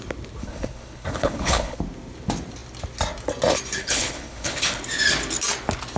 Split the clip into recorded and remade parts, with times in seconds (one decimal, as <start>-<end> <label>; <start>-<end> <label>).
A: 0.0-0.4 recorded; 0.4-1.8 remade; 1.8-3.8 recorded; 3.8-4.8 remade; 4.8-6.0 recorded